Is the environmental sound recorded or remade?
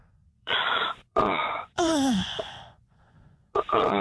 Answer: remade